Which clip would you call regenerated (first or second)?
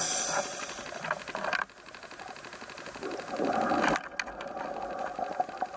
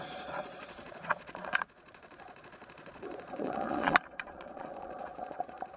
second